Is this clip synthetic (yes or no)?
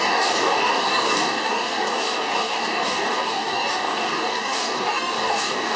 yes